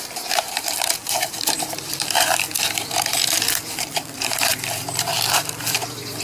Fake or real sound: fake